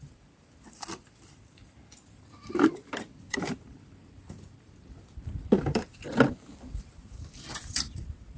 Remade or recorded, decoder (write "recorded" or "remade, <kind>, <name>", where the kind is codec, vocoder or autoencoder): remade, vocoder, BigVGAN v2